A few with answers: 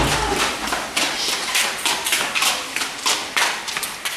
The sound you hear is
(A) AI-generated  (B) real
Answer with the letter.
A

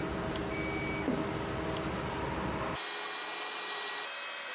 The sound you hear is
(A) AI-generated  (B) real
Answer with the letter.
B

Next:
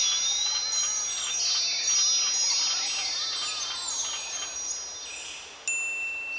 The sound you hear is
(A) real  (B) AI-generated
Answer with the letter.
A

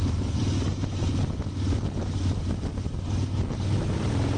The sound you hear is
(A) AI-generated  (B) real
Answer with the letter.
B